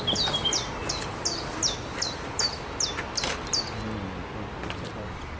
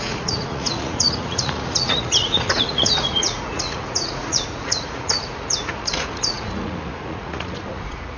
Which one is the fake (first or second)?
second